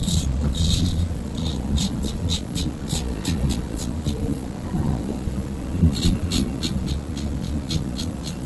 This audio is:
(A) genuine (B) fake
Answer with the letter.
B